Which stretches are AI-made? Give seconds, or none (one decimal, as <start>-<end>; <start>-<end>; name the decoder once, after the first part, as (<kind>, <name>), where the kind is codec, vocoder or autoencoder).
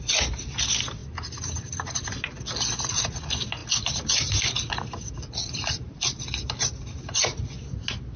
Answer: 1.0-2.1 (vocoder, BigVGAN v2); 3.6-7.0